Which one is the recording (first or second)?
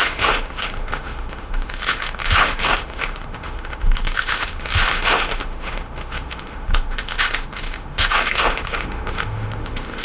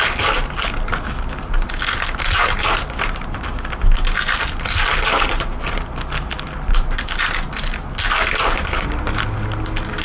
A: second